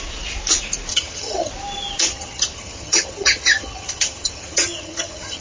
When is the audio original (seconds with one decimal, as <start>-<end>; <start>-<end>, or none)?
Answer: 0.0-0.9; 1.5-2.1